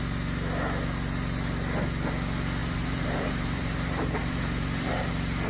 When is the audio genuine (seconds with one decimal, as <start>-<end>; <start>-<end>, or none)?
0.0-2.6; 5.1-5.5